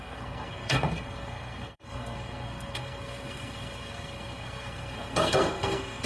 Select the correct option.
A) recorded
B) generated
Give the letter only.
B